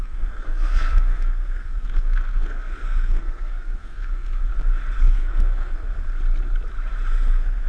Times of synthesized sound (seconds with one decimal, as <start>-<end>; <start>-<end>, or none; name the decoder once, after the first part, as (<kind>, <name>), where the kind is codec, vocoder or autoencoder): 0.0-4.5 (codec, SNAC); 5.0-5.9; 7.3-7.7